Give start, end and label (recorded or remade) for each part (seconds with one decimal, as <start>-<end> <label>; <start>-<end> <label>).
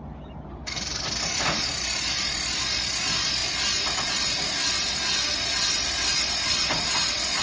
0.0-7.4 recorded